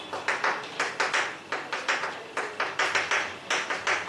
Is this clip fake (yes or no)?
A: no